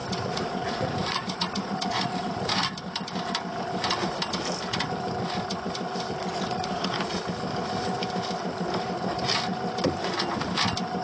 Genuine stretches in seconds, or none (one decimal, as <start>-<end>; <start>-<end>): 2.2-6.3; 7.2-11.0